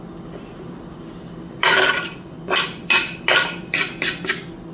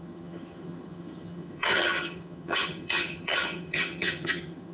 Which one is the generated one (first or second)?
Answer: second